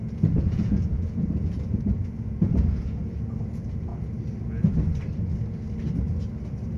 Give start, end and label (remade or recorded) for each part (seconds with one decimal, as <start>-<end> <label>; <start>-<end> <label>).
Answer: 0.0-3.9 remade; 3.9-6.8 recorded